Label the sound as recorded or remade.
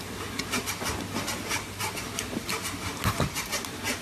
recorded